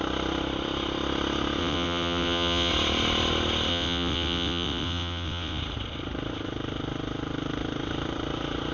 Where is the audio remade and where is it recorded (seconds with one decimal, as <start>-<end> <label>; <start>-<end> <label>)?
0.0-1.6 recorded; 1.6-2.7 remade; 2.7-3.7 recorded; 3.7-5.6 remade; 5.6-8.7 recorded